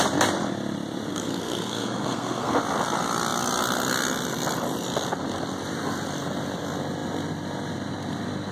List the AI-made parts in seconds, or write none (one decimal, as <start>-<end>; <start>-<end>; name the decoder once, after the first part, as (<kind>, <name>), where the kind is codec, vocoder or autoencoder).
1.1-2.6 (codec, SNAC)